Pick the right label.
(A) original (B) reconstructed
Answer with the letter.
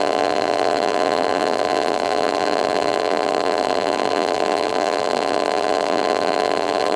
B